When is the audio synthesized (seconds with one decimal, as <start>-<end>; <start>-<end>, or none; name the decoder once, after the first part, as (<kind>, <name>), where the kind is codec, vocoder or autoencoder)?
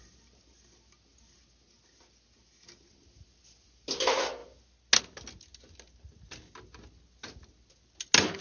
none